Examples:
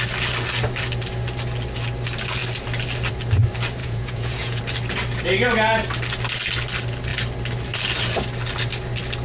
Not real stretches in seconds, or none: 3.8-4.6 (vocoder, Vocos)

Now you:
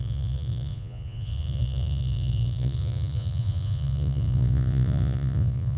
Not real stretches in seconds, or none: 0.0-5.8 (vocoder, Vocos)

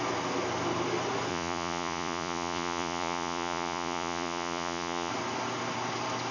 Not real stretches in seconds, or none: 1.3-5.1 (vocoder, Vocos)